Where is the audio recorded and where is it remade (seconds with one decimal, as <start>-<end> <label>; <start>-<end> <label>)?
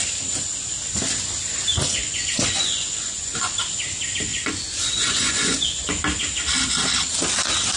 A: 0.0-1.7 recorded; 1.7-3.6 remade; 3.6-4.3 recorded; 4.3-6.0 remade; 6.0-7.8 recorded